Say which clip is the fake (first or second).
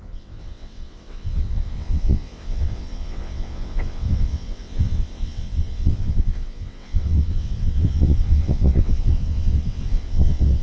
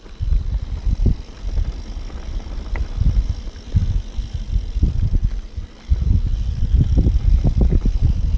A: first